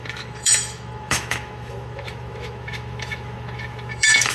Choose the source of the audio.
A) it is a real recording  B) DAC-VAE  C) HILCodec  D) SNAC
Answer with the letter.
B